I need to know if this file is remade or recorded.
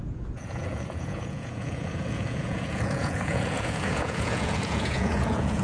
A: remade